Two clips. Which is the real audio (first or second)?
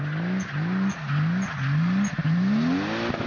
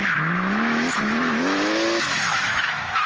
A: first